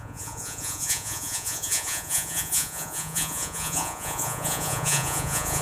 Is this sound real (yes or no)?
no